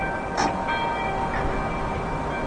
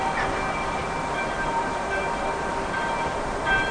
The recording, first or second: first